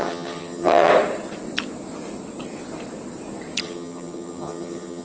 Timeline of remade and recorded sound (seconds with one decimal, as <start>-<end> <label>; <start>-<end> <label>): 0.0-0.9 remade; 0.9-3.6 recorded; 3.6-5.0 remade